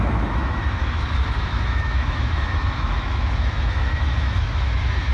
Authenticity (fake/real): fake